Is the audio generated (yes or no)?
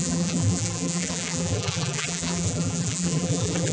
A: yes